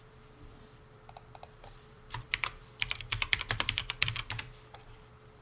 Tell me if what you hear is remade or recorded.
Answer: remade